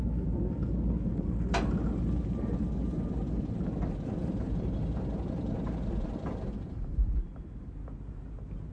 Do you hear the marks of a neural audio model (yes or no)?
no